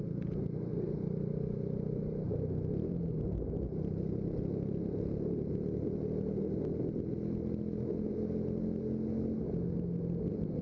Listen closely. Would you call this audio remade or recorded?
recorded